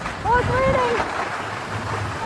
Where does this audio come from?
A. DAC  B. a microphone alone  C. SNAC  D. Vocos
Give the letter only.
B